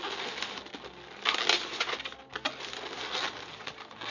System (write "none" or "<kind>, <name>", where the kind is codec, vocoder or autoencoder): none